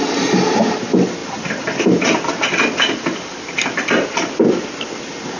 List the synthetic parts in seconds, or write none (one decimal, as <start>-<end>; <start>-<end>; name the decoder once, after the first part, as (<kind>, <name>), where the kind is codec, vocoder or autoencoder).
1.2-2.1 (vocoder, BigVGAN v2)